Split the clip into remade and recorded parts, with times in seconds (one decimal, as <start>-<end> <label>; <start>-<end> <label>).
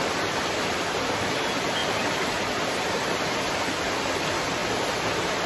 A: 0.0-1.8 recorded; 1.8-2.8 remade; 2.8-4.6 recorded; 4.6-5.5 remade